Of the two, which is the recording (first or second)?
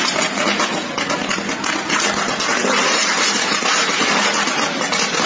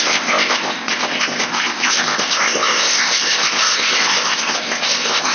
first